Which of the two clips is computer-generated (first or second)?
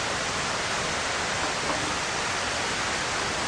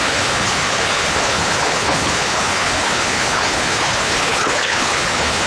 second